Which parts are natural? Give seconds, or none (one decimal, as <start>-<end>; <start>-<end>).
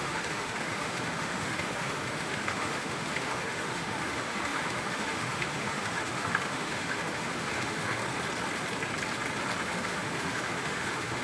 8.0-9.6